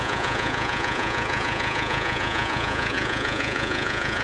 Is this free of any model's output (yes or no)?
no